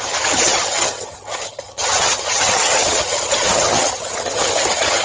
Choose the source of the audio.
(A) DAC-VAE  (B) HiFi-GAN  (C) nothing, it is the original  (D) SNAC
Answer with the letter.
B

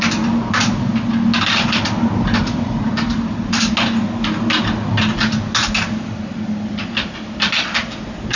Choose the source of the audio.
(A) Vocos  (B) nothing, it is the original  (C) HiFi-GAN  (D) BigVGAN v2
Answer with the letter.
B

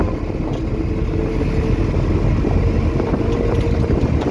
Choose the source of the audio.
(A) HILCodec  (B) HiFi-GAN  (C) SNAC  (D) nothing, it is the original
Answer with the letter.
D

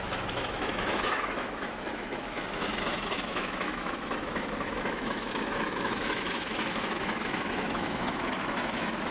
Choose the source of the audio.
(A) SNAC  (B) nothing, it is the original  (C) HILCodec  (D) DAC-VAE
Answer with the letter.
D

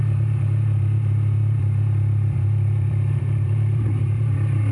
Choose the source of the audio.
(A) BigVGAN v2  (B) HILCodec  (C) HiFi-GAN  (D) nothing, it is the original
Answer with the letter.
A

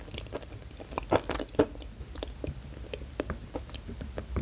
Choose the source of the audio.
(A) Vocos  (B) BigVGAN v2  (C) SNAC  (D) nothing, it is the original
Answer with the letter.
D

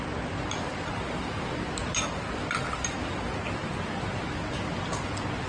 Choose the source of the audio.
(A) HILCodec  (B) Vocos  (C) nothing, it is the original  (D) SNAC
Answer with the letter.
C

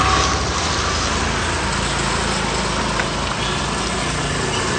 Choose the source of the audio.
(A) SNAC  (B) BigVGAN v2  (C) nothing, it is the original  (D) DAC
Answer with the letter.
C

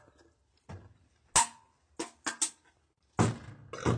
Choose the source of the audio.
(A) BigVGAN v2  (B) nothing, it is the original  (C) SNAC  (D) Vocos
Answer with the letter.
B